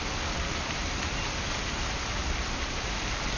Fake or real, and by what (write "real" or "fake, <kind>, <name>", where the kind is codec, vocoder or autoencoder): real